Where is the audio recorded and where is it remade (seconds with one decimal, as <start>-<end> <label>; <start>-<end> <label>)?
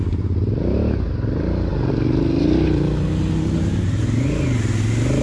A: 0.0-5.2 recorded